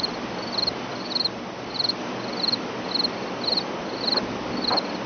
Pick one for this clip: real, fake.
real